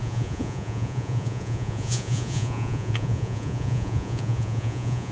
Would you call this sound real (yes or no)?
no